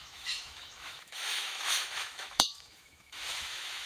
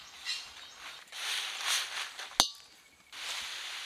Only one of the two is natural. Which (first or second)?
second